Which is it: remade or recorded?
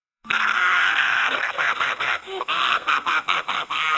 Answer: remade